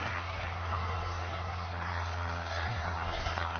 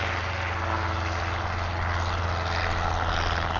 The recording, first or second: second